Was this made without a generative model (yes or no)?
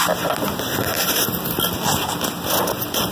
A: yes